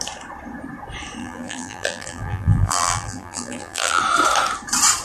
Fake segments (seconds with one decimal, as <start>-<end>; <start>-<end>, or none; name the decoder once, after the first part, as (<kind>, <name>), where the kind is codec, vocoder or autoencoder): 1.2-4.0 (vocoder, BigVGAN v2)